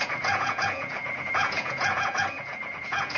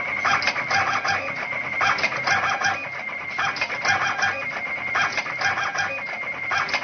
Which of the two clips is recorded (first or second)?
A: second